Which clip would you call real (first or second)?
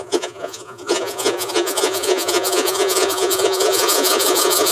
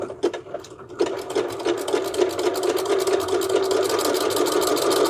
second